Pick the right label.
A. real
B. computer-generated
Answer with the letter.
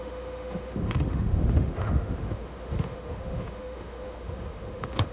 B